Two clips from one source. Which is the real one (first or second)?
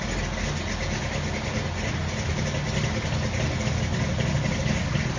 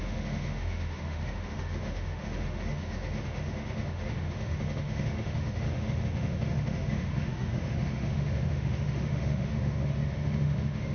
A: first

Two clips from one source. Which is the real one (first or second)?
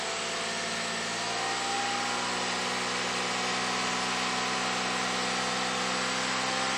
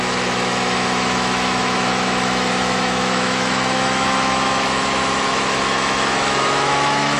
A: first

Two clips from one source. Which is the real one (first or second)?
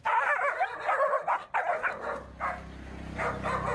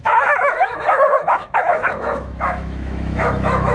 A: first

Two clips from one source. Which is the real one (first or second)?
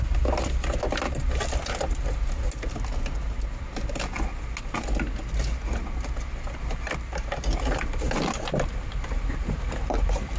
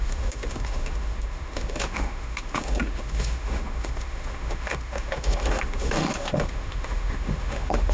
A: first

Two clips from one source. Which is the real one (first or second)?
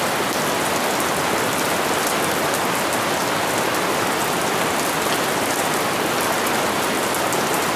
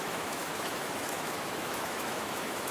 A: first